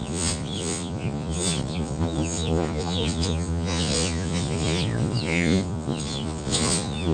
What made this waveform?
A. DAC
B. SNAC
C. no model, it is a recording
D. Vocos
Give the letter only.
D